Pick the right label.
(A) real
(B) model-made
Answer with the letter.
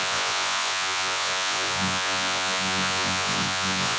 B